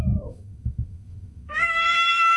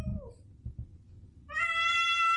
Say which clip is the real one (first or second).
second